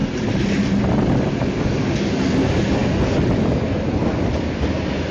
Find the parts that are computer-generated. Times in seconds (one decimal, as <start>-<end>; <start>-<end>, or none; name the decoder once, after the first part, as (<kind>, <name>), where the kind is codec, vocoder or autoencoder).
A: 0.0-0.8 (vocoder, BigVGAN v2)